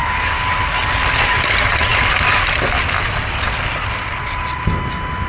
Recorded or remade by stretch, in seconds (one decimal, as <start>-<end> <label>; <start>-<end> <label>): 0.0-5.3 recorded